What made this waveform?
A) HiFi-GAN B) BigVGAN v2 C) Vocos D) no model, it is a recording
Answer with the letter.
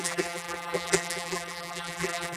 B